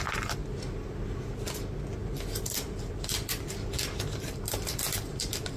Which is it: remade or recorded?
recorded